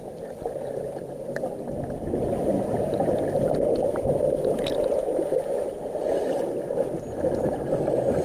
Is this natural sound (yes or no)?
yes